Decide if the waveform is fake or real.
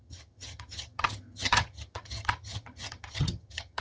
fake